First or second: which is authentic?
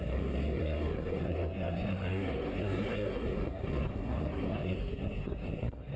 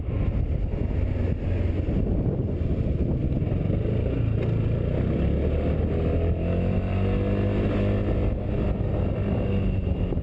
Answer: second